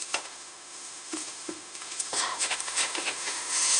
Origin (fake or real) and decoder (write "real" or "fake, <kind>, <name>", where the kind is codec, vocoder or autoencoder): fake, autoencoder, DAC-VAE